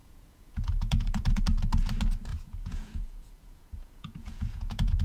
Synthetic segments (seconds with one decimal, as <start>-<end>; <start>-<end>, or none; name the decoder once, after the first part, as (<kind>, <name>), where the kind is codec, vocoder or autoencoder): 0.0-1.4 (vocoder, Vocos); 2.3-5.0